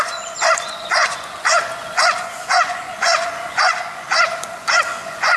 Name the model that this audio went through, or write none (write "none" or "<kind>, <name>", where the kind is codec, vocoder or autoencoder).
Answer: vocoder, Vocos